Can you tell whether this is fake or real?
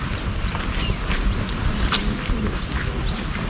real